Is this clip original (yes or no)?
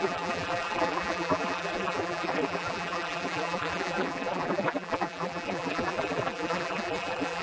no